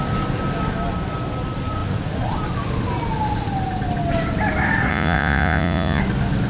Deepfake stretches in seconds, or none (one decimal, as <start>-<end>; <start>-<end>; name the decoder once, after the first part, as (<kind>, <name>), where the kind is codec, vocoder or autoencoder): 4.9-6.0 (vocoder, Vocos)